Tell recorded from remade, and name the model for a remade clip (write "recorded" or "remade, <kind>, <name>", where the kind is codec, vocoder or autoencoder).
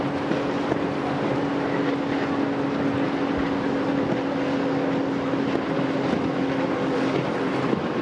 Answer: recorded